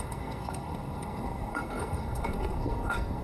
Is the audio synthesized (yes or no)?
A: yes